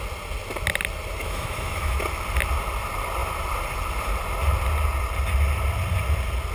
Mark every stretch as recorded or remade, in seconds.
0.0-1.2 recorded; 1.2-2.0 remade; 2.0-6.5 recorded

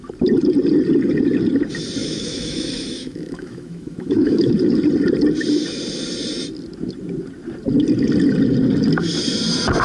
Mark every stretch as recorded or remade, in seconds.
0.0-2.0 recorded; 2.0-4.5 remade; 4.5-9.8 recorded

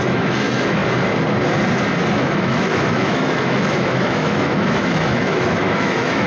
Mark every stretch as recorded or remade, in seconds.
0.0-0.8 remade; 0.8-2.1 recorded; 2.1-6.3 remade

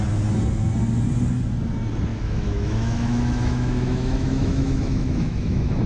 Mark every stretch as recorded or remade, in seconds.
0.0-2.1 recorded; 2.1-5.9 remade

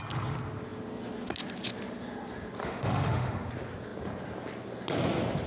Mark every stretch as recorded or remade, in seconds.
0.0-2.6 recorded; 2.6-3.5 remade; 3.5-5.5 recorded

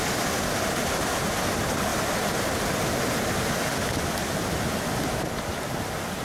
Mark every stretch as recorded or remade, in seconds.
0.0-6.2 recorded

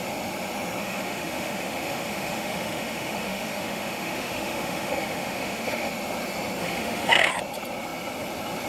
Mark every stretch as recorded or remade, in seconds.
0.0-0.8 recorded; 0.8-5.9 remade; 5.9-6.6 recorded; 6.6-7.3 remade; 7.3-8.7 recorded